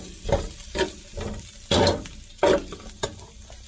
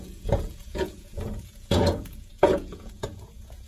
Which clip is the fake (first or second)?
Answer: second